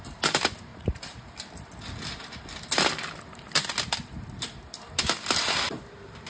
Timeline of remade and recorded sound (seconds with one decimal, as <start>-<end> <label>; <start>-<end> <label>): 0.0-0.7 recorded; 0.7-1.3 remade; 1.3-6.3 recorded